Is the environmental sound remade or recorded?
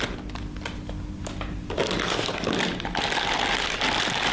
recorded